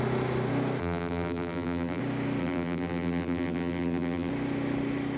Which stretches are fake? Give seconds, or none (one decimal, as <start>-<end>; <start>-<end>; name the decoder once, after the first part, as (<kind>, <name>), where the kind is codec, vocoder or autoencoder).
0.8-2.0 (vocoder, BigVGAN v2); 2.4-4.3